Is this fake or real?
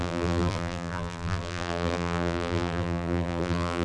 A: fake